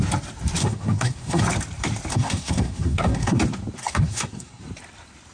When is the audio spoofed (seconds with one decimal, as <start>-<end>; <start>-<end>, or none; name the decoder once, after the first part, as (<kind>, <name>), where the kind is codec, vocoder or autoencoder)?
0.6-1.4 (codec, SNAC); 2.1-3.4; 3.8-4.6